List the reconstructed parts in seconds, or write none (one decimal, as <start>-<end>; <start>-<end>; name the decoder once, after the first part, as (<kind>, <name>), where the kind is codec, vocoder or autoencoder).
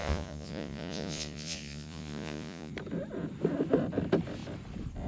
0.0-2.7 (vocoder, Vocos)